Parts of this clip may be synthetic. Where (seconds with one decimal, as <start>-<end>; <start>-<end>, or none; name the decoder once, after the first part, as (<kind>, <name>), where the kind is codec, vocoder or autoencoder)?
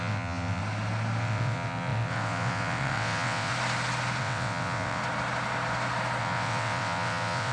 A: 0.0-0.6 (vocoder, WaveNeXt); 1.2-3.5; 4.2-5.0; 6.2-7.5